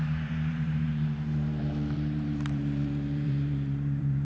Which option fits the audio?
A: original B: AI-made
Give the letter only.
B